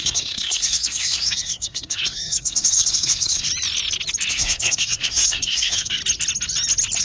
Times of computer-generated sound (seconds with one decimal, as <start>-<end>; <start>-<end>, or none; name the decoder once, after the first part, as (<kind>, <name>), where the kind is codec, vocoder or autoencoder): 0.0-3.5 (codec, SNAC); 4.3-6.0